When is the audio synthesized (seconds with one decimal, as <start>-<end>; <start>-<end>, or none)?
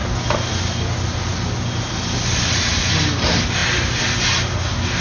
none